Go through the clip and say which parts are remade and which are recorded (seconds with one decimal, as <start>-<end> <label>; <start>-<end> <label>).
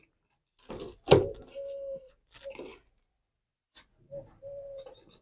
0.0-1.5 recorded; 1.5-2.1 remade; 2.1-5.2 recorded